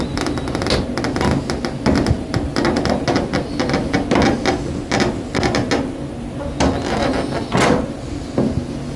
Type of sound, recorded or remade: recorded